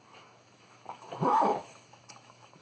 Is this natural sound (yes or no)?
no